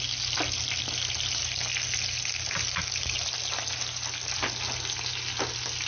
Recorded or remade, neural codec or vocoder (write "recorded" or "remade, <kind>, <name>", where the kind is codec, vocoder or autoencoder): recorded